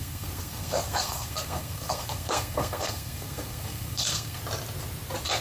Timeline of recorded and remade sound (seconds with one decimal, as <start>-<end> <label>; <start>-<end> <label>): 0.0-4.4 remade; 4.4-5.4 recorded

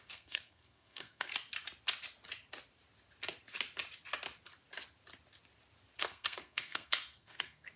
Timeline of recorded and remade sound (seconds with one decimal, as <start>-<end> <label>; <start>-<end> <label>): 0.0-1.3 remade; 1.3-6.0 recorded; 6.0-7.8 remade

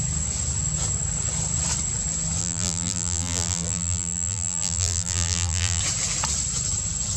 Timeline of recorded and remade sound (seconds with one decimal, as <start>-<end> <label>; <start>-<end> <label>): 0.0-2.4 recorded; 2.4-5.8 remade; 5.8-7.2 recorded

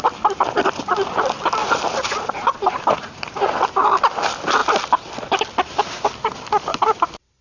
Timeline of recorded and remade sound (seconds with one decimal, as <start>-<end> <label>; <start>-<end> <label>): 0.0-1.6 recorded; 1.6-3.4 remade; 3.4-6.7 recorded; 6.7-7.4 remade

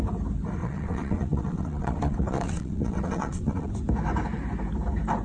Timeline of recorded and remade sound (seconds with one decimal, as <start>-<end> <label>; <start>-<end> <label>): 0.0-0.6 recorded; 0.6-3.7 remade; 3.7-5.2 recorded

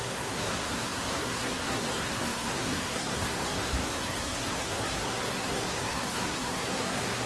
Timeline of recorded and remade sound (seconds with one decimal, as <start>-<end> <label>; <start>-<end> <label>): 0.0-7.3 remade